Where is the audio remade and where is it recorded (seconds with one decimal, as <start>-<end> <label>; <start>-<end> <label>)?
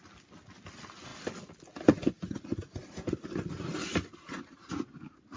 0.0-5.4 recorded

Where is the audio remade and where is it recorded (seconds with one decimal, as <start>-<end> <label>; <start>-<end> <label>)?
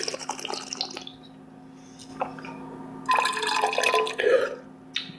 0.0-5.2 recorded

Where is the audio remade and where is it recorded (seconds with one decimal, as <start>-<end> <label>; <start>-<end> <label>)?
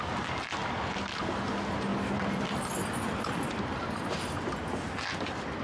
0.0-5.6 recorded